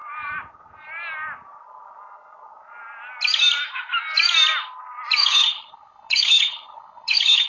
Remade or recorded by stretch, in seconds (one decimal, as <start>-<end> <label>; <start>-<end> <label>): 0.0-5.2 recorded; 5.2-7.5 remade